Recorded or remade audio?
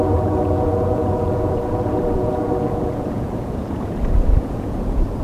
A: remade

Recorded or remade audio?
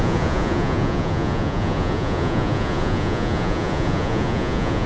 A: remade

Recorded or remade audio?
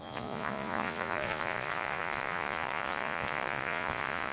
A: remade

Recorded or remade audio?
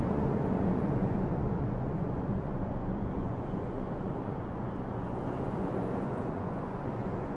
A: remade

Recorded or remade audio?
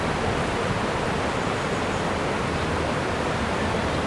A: recorded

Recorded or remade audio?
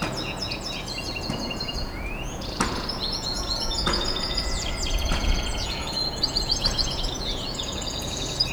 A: remade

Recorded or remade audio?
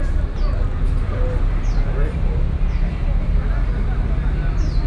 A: recorded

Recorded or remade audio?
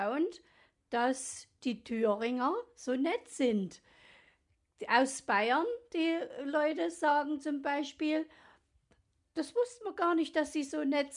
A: recorded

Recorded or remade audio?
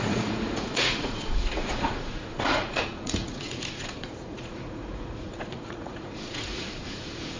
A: remade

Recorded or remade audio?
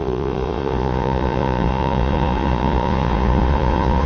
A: remade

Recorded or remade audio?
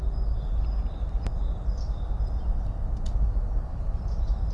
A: recorded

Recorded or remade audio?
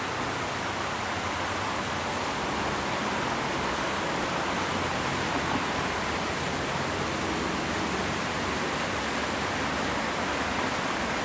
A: recorded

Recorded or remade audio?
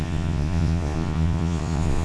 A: remade